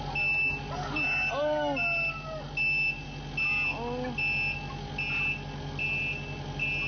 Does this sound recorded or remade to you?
recorded